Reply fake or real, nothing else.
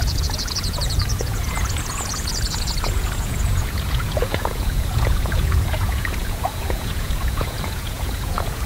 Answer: fake